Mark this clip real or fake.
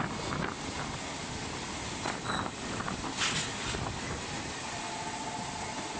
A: real